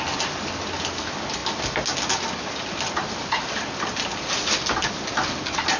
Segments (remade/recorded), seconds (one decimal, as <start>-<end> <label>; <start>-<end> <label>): 0.0-5.8 recorded